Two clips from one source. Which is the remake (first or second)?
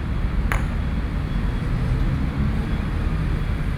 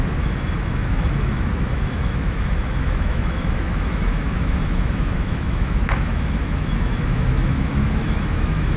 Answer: second